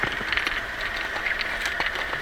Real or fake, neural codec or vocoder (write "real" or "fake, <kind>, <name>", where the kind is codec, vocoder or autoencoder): real